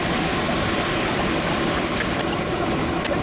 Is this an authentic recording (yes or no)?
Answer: yes